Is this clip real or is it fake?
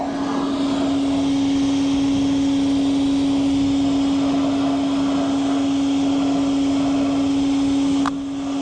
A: real